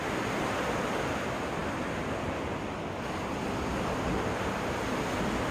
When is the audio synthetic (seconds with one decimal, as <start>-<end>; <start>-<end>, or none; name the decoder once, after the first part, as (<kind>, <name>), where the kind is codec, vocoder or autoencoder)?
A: none